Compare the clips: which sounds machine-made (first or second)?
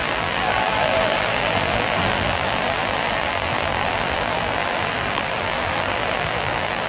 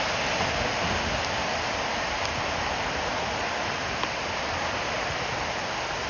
first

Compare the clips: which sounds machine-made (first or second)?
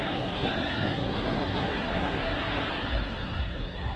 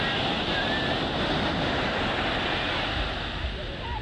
first